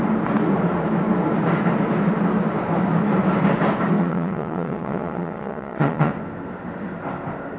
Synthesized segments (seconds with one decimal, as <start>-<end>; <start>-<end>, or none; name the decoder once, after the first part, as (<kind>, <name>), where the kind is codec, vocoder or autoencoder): 4.0-6.1 (vocoder, Vocos)